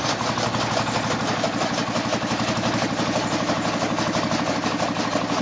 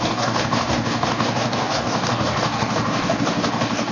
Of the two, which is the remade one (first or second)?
second